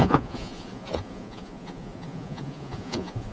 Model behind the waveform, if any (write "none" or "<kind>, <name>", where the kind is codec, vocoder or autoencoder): vocoder, Vocos